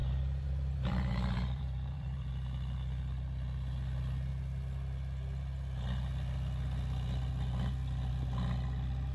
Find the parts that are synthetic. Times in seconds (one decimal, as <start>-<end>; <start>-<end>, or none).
0.0-2.3